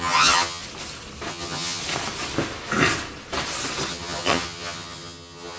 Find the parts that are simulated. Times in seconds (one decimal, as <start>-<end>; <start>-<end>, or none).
0.0-0.6; 1.3-1.8; 3.9-5.6